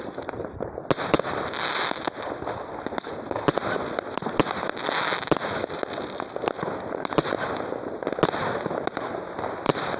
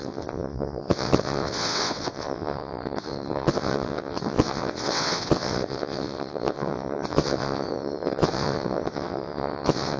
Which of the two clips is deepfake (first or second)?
second